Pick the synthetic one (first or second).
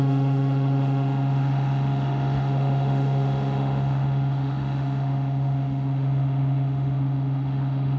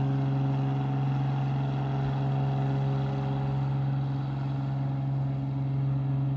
first